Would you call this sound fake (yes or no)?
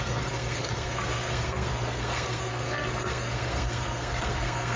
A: yes